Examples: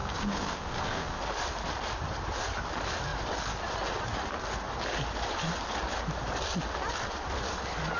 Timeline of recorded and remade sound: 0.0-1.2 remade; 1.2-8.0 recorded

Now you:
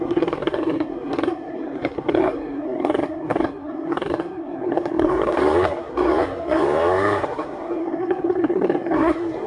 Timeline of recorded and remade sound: 0.0-9.5 remade

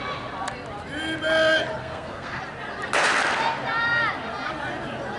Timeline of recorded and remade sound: 0.0-1.8 recorded; 1.8-2.4 remade; 2.4-5.2 recorded

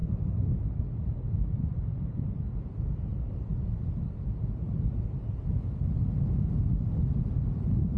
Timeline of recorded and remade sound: 0.0-8.0 recorded

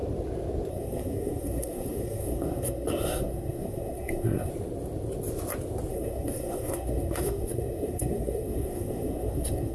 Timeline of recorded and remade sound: 0.0-0.7 recorded; 0.7-4.5 remade; 4.5-5.9 recorded; 5.9-9.7 remade

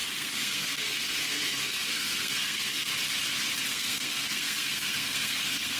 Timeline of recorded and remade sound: 0.0-2.9 remade; 2.9-3.7 recorded; 3.7-5.8 remade

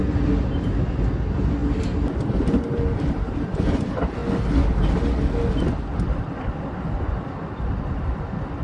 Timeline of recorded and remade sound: 0.0-8.6 recorded